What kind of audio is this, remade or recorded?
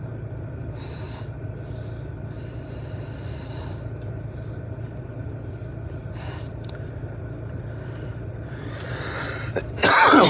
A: remade